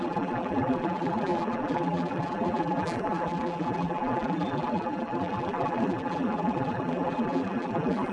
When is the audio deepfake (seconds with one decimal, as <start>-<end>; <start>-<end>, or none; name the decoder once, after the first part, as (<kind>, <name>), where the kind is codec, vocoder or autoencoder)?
0.0-8.1 (vocoder, BigVGAN v2)